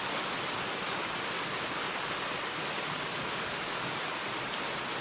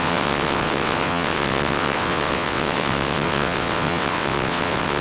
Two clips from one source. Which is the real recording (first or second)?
first